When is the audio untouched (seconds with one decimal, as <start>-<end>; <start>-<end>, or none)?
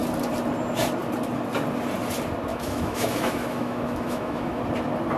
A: 0.0-2.5; 4.6-5.2